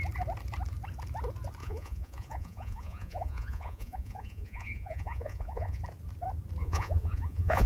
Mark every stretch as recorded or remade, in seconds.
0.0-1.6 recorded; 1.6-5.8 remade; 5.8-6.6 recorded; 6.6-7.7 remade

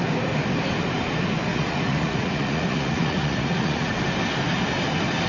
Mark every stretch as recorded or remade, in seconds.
0.0-1.5 recorded; 1.5-4.0 remade; 4.0-5.3 recorded

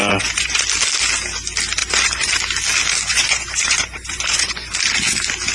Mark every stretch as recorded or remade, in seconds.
0.0-0.6 remade; 0.6-1.8 recorded; 1.8-2.3 remade; 2.3-3.1 recorded; 3.1-4.7 remade; 4.7-5.5 recorded

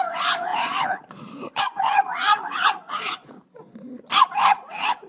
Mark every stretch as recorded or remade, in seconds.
0.0-5.1 remade

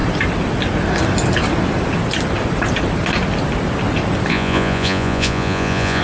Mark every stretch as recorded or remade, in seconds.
0.0-4.3 recorded; 4.3-6.0 remade

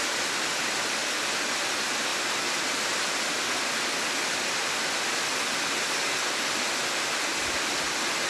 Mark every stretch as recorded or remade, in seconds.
0.0-8.3 recorded